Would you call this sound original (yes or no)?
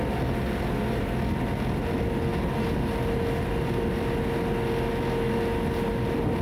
yes